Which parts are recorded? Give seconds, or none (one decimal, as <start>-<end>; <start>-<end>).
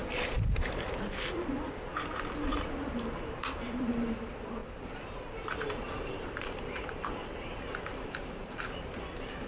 4.6-5.2